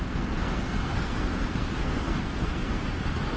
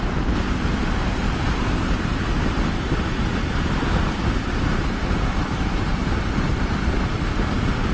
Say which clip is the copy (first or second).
first